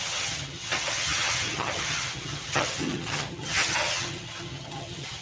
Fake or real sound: fake